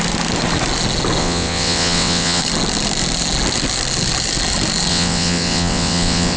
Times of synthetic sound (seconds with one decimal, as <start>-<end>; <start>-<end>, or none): 1.2-2.4; 4.9-6.4